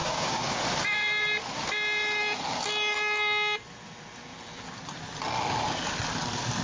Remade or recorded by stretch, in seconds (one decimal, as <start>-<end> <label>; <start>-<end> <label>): 0.0-0.6 remade; 0.6-6.6 recorded